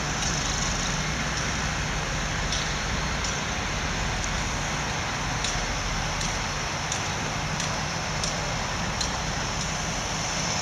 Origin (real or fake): real